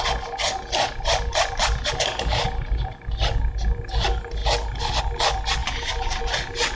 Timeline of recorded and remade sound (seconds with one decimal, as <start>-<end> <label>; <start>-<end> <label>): 0.0-6.8 recorded